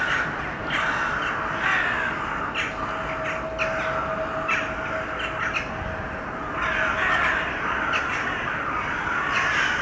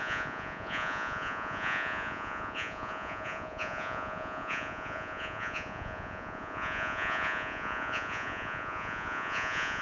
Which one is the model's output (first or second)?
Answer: second